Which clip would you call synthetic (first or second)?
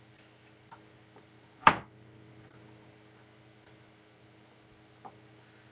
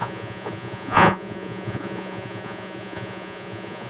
second